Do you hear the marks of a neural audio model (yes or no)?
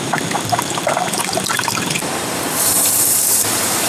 yes